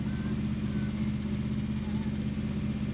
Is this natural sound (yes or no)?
yes